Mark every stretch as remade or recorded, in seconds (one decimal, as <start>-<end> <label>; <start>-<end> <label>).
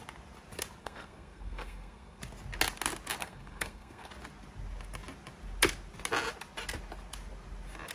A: 0.0-0.8 recorded; 0.8-2.2 remade; 2.2-3.2 recorded; 3.2-4.1 remade; 4.1-7.9 recorded